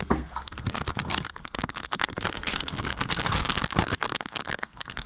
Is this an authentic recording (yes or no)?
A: no